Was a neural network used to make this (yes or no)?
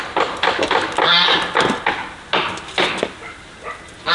no